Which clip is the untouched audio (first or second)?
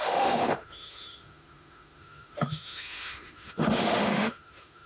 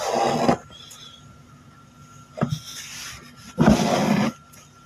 second